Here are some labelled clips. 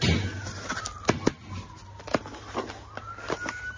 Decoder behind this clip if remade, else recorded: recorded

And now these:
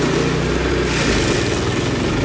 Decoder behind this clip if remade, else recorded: recorded